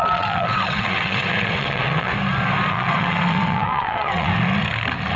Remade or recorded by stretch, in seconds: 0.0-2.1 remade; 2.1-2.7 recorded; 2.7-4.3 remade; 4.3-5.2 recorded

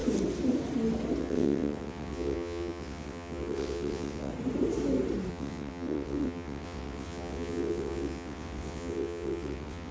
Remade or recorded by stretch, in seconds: 0.0-1.2 recorded; 1.2-4.3 remade; 4.3-5.3 recorded; 5.3-9.9 remade